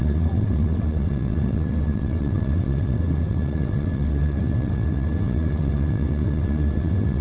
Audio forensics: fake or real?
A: fake